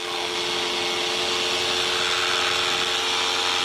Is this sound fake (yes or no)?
no